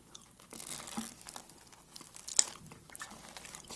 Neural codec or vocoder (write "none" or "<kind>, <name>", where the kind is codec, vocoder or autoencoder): none